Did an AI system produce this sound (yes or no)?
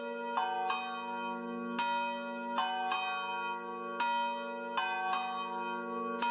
no